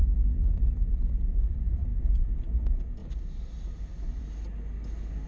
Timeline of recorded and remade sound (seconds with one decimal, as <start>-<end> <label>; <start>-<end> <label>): 0.0-1.3 remade; 1.3-1.9 recorded; 1.9-2.4 remade; 2.4-5.3 recorded

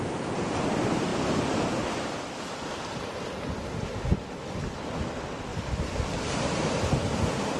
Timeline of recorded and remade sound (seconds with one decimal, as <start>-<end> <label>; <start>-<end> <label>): 0.0-1.1 recorded; 1.1-2.5 remade; 2.5-5.5 recorded; 5.5-7.6 remade

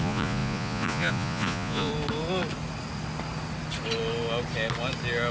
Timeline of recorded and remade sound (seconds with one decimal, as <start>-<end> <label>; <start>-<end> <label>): 0.0-1.9 remade; 1.9-5.3 recorded

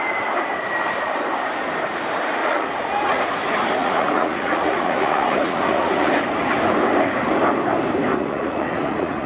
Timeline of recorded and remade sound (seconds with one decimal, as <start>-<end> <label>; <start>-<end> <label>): 0.0-2.4 recorded; 2.4-3.2 remade; 3.2-3.8 recorded; 3.8-6.1 remade; 6.1-8.1 recorded; 8.1-9.3 remade

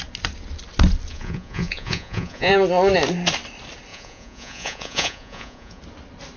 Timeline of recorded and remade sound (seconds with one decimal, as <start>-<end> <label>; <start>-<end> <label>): 0.0-1.1 recorded; 1.1-2.5 remade; 2.5-3.9 recorded; 3.9-5.8 remade; 5.8-6.4 recorded

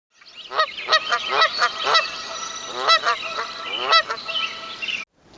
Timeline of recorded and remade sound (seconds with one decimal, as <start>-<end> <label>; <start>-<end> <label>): 0.0-5.4 recorded

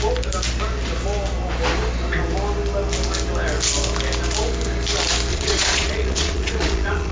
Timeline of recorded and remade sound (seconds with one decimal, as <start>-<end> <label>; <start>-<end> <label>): 0.0-5.3 recorded; 5.3-7.1 remade

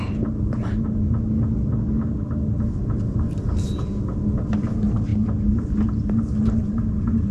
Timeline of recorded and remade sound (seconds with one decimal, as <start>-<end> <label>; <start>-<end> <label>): 0.0-7.3 recorded